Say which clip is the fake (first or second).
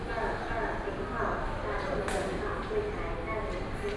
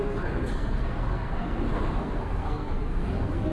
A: second